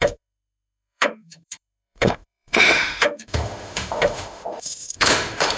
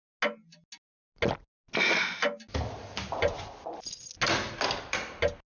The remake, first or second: first